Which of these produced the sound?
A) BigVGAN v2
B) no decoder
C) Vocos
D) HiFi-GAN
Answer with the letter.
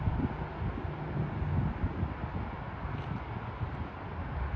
B